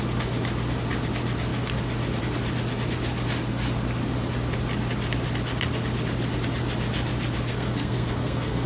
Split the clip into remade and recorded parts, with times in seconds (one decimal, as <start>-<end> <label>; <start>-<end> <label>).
0.0-7.5 recorded; 7.5-8.7 remade